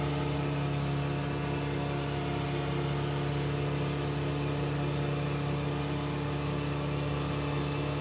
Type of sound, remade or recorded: recorded